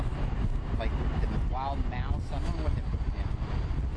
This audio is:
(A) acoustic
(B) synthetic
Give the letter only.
A